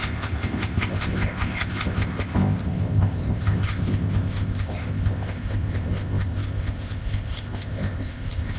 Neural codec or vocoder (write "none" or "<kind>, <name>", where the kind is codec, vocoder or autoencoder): codec, ZipCodec